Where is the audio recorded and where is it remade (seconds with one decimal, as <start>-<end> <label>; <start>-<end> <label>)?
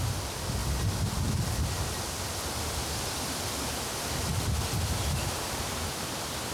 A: 0.0-6.5 recorded